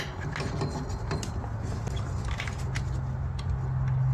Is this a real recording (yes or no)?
yes